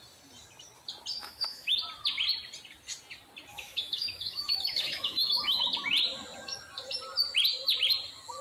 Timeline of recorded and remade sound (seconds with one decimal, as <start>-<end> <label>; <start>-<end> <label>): 0.0-1.2 recorded; 1.2-1.8 remade; 1.8-3.5 recorded; 3.5-5.6 remade; 5.6-8.4 recorded